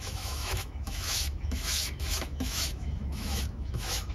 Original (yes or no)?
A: no